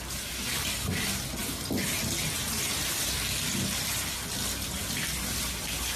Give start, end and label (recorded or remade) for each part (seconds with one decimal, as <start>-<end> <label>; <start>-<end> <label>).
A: 0.0-6.0 recorded